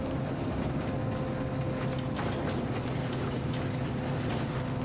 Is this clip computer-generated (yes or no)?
no